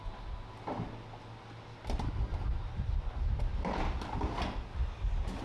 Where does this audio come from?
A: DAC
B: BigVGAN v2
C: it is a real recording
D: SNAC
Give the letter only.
C